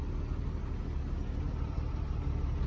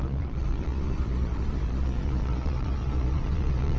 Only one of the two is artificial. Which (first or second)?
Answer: second